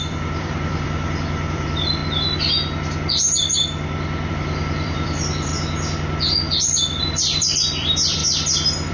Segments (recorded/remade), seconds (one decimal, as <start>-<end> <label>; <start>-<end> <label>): 0.0-2.0 remade; 2.0-4.3 recorded; 4.3-5.5 remade; 5.5-7.0 recorded; 7.0-8.2 remade; 8.2-8.9 recorded